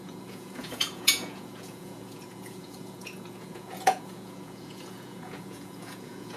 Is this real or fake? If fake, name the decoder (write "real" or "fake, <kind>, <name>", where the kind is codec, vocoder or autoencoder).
fake, vocoder, Vocos